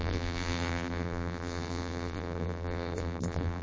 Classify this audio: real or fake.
fake